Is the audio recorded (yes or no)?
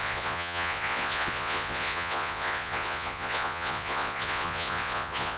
no